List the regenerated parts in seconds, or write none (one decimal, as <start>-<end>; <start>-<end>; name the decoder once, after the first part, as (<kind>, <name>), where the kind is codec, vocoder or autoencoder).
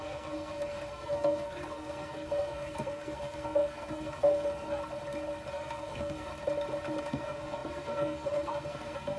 0.0-4.8 (codec, SNAC); 5.5-6.3; 7.0-9.2